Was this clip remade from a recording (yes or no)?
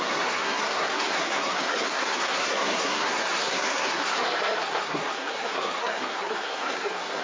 yes